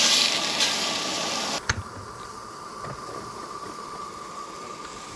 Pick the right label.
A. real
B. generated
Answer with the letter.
A